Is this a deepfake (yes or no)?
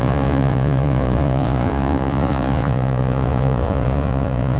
yes